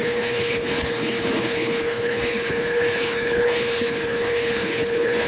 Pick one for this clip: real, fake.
fake